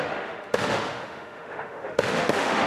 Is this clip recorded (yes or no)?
no